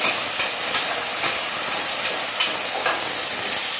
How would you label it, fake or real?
real